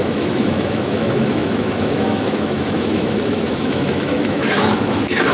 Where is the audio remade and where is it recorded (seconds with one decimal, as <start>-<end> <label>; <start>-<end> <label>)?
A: 0.0-5.3 remade